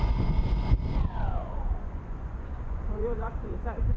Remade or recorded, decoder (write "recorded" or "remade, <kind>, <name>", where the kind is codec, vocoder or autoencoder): remade, vocoder, Vocos